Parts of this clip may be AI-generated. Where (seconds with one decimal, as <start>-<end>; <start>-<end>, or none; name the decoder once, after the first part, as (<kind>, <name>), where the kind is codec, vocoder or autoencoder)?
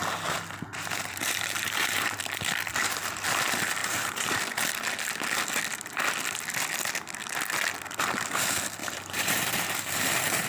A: 0.7-2.2 (vocoder, BigVGAN v2); 3.8-4.4; 8.8-10.5